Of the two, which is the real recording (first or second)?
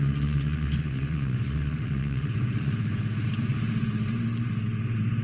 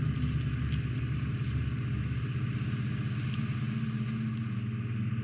second